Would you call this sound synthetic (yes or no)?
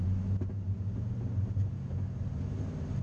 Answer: no